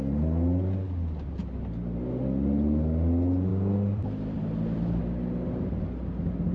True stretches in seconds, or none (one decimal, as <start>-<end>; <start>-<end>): 0.0-3.5; 5.0-6.5